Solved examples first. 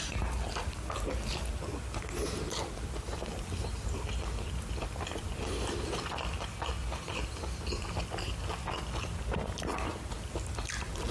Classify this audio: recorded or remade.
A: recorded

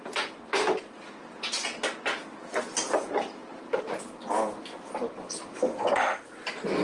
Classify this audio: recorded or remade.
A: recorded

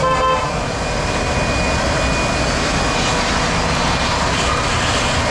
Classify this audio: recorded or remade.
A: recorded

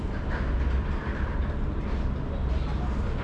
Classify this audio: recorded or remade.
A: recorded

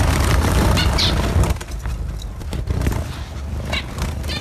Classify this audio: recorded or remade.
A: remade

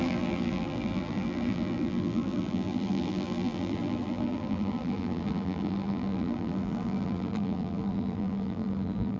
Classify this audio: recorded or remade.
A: remade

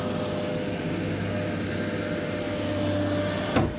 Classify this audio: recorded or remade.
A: recorded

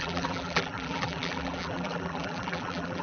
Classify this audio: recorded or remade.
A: remade